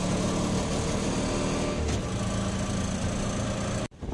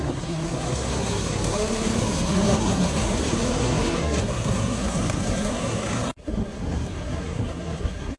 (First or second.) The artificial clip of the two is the second